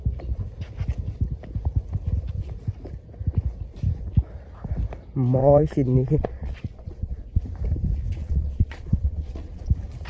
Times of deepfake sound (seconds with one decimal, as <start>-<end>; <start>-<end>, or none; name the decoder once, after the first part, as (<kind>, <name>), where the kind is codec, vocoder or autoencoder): 5.4-7.4 (vocoder, Vocos); 8.2-9.7